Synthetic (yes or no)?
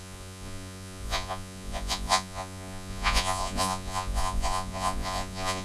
yes